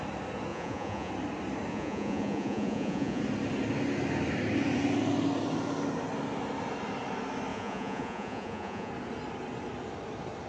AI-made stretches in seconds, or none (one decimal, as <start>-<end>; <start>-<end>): 0.5-1.1; 1.7-3.2; 7.5-8.9

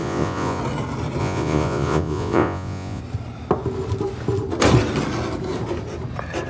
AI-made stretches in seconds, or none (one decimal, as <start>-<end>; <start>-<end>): 0.0-0.6; 1.2-3.0